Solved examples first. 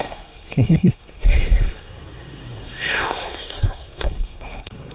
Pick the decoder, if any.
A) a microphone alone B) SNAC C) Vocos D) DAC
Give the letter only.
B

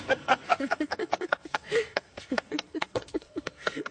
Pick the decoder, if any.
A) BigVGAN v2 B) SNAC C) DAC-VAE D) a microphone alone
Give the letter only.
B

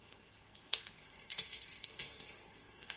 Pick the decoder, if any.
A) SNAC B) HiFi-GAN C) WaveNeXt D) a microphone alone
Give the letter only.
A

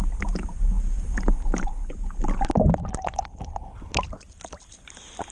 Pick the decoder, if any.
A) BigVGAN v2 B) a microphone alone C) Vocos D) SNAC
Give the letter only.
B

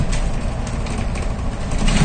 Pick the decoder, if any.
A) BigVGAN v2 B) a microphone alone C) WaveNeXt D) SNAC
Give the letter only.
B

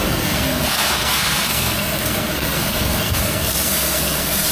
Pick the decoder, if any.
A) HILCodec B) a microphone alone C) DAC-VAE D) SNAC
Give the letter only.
D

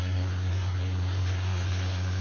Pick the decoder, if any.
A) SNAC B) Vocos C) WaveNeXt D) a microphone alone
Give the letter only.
A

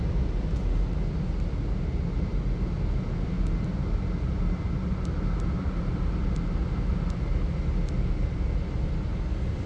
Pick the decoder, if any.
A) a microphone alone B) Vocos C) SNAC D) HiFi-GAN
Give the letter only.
A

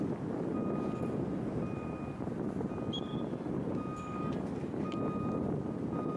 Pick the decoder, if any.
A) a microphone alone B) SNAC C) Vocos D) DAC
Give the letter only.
A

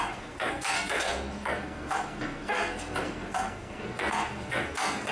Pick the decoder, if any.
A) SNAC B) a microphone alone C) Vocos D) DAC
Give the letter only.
A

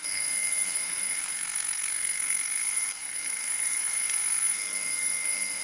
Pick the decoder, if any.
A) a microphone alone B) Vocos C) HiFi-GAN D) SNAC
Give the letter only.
D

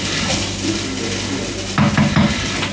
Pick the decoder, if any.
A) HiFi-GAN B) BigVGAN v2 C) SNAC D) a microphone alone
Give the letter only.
D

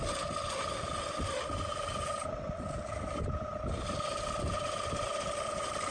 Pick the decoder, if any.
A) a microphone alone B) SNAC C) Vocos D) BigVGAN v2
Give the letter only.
A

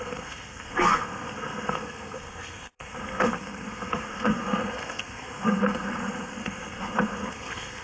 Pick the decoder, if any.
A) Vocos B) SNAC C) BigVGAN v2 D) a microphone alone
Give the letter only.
B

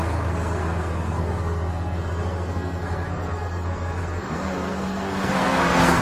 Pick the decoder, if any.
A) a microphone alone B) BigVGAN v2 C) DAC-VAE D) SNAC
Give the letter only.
D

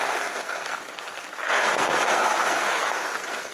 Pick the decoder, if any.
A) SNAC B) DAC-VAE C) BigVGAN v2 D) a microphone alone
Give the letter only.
A